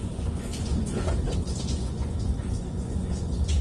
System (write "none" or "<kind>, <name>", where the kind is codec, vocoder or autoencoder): vocoder, Vocos